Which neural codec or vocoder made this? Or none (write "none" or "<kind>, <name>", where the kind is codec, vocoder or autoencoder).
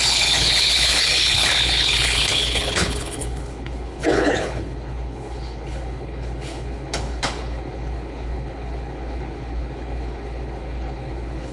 codec, HILCodec